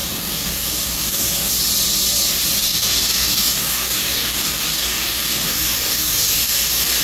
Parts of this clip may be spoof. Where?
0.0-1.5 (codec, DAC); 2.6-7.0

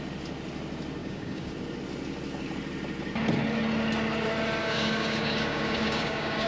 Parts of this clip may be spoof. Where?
1.0-1.5 (codec, DAC); 4.6-6.5

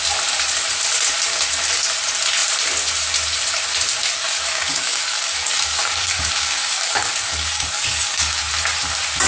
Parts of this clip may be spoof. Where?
4.0-8.4 (codec, DAC)

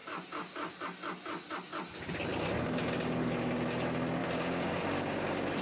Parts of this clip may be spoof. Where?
4.2-4.8 (codec, DAC)